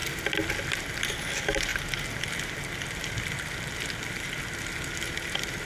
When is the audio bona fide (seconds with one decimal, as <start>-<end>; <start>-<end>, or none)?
0.0-5.7